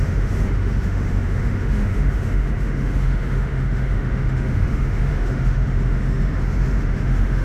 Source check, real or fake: fake